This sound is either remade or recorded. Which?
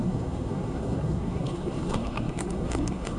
remade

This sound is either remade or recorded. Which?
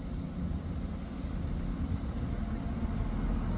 recorded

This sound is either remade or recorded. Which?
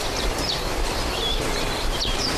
recorded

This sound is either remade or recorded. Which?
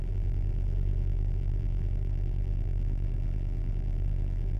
remade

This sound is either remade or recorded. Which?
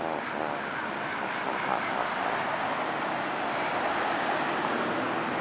recorded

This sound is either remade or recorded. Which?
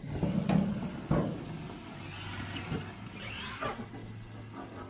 recorded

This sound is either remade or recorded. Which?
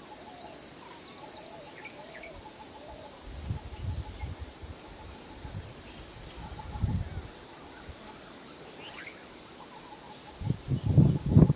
recorded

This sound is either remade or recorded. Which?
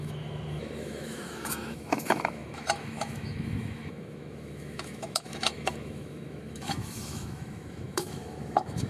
remade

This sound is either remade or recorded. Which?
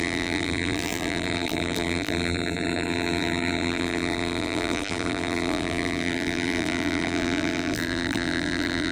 remade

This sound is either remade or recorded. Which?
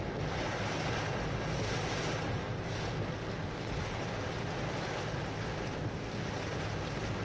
recorded